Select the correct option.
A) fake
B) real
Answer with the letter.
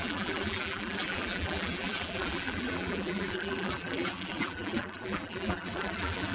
A